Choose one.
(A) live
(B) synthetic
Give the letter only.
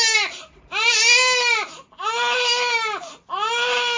A